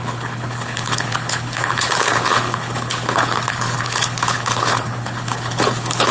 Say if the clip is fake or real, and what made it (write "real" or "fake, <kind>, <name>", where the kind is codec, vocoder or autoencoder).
fake, codec, HILCodec